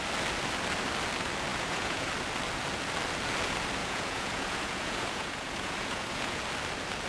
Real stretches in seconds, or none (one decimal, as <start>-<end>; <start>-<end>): 0.0-1.5; 2.1-3.8; 6.4-7.1